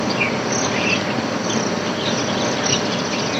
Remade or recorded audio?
recorded